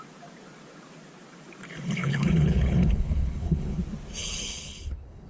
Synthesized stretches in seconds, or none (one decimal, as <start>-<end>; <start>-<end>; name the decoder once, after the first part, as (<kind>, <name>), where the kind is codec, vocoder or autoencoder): 2.0-3.8 (codec, HILCodec); 4.2-5.3